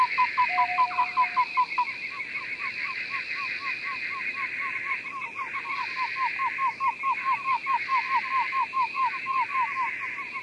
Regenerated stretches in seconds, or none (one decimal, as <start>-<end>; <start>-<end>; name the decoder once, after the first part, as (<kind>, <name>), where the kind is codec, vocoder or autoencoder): none